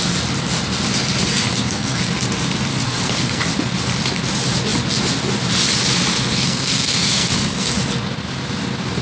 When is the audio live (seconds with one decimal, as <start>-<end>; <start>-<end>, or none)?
0.0-1.3; 2.0-2.7; 3.4-6.1; 7.8-9.0